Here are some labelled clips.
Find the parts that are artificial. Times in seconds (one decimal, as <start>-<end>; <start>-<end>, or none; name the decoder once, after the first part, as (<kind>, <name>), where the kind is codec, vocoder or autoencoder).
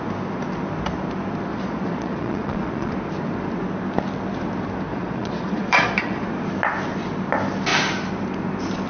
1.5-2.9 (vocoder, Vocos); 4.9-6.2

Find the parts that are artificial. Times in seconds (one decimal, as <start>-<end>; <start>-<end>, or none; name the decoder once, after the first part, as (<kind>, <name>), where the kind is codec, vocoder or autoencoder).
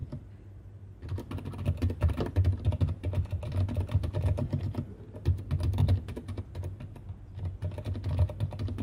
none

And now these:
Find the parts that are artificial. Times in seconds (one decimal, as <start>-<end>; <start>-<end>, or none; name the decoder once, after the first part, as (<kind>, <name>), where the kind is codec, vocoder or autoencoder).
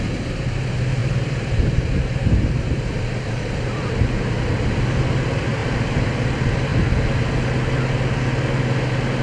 1.0-4.4 (vocoder, BigVGAN v2); 5.6-6.1